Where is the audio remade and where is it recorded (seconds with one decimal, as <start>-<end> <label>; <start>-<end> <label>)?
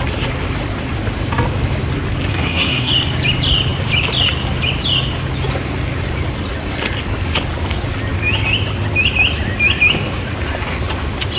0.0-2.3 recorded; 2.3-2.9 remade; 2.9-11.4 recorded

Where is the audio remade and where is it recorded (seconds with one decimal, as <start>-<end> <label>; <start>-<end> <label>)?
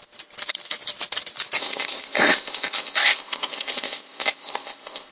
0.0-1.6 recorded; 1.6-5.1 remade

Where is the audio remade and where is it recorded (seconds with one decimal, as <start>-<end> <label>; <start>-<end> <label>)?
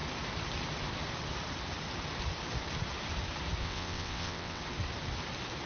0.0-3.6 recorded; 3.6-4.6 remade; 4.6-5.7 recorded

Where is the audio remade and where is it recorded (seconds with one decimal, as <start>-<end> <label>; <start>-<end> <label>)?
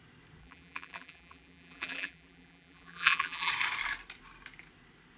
0.0-0.4 recorded; 0.4-3.5 remade; 3.5-5.2 recorded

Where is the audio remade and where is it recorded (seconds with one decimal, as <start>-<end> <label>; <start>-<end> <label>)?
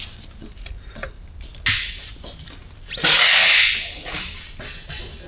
0.0-5.3 recorded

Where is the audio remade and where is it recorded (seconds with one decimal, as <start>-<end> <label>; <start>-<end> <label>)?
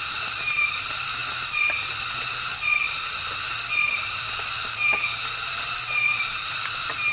0.0-1.2 remade; 1.2-3.9 recorded; 3.9-7.1 remade